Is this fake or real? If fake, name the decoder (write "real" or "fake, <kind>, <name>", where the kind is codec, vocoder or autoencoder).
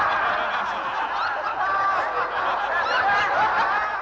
real